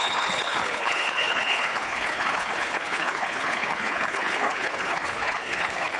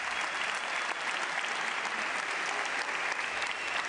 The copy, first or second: first